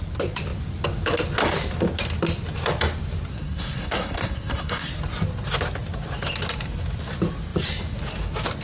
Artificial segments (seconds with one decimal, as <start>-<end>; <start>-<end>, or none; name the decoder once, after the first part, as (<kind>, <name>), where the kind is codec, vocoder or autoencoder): 3.3-4.9 (codec, SNAC)